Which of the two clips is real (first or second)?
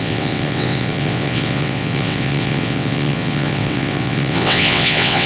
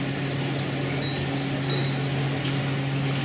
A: second